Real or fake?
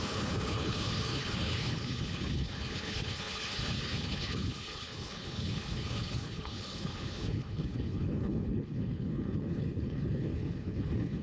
fake